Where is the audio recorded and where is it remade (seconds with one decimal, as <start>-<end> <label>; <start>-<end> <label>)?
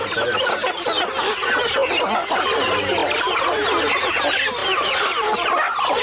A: 0.0-6.0 recorded